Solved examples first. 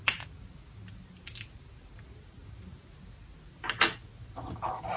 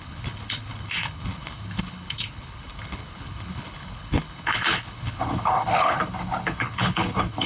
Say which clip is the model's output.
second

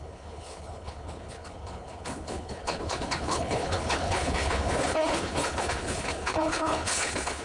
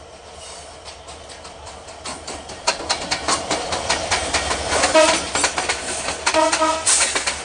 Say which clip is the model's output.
first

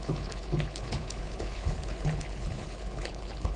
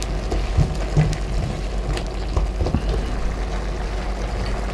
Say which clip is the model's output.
first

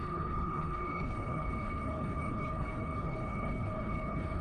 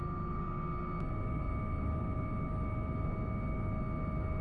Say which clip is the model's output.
first